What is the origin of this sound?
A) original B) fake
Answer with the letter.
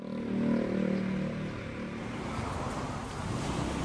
A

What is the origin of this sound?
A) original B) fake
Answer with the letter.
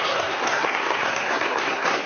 B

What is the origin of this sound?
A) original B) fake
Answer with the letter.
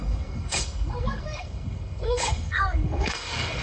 B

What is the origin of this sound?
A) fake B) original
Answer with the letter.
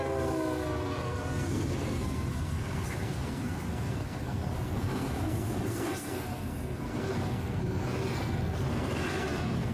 A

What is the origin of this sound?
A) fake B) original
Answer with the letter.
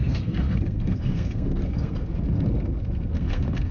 A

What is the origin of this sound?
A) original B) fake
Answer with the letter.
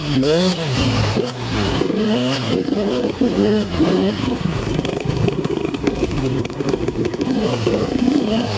B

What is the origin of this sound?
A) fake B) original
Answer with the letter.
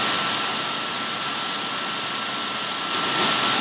B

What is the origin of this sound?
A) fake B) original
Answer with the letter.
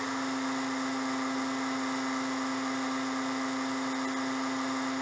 B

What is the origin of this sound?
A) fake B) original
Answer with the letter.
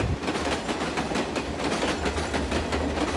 B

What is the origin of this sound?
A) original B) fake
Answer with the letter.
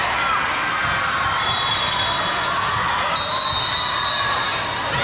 A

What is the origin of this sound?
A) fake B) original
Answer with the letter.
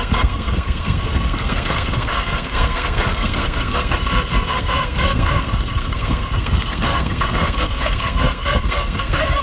A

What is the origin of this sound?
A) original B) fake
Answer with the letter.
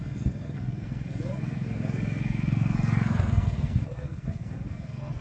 B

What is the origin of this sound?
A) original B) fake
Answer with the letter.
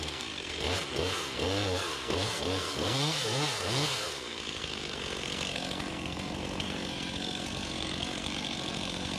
B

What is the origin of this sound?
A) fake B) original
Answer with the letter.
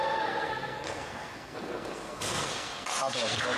A